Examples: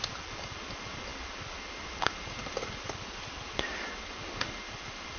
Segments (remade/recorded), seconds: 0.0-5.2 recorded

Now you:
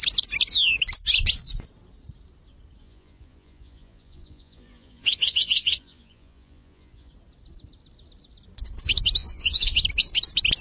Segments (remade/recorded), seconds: 0.0-2.8 recorded; 2.8-7.1 remade; 7.1-9.2 recorded; 9.2-9.7 remade; 9.7-10.6 recorded

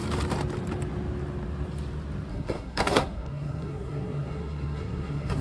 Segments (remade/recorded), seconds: 0.0-2.3 recorded; 2.3-5.4 remade